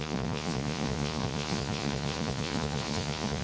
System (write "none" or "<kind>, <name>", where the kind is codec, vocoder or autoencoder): vocoder, Vocos